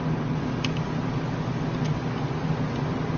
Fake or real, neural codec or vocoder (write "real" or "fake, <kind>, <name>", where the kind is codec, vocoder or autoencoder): real